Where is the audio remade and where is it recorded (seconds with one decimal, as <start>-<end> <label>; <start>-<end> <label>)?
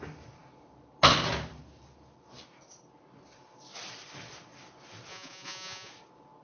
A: 0.0-5.1 recorded; 5.1-5.9 remade; 5.9-6.4 recorded